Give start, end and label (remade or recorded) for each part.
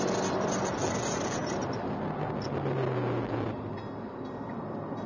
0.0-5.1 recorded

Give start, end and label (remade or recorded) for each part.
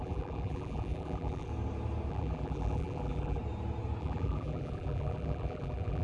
0.0-1.5 remade; 1.5-2.1 recorded; 2.1-3.4 remade; 3.4-4.0 recorded; 4.0-6.0 remade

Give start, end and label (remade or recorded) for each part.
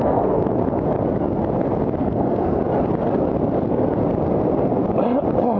0.0-0.6 remade; 0.6-2.0 recorded; 2.0-2.6 remade; 2.6-5.6 recorded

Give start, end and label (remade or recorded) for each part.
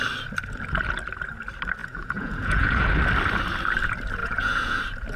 0.0-1.8 recorded; 1.8-3.0 remade; 3.0-4.2 recorded; 4.2-4.8 remade; 4.8-5.2 recorded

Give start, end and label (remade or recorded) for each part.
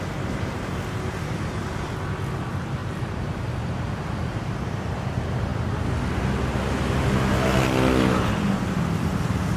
0.0-2.8 recorded; 2.8-4.4 remade; 4.4-9.6 recorded